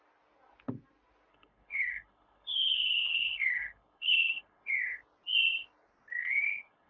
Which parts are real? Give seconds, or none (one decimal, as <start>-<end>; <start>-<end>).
0.0-1.3; 4.7-6.2